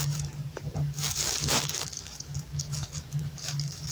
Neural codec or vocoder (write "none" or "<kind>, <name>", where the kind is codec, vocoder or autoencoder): codec, DAC